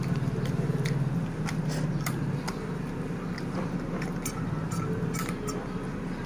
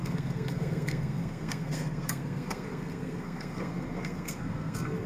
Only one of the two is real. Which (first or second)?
first